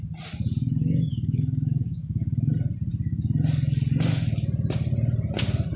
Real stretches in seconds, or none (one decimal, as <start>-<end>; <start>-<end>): 0.0-0.8; 2.5-5.8